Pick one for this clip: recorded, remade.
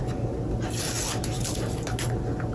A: recorded